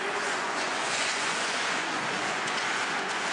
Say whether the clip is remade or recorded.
remade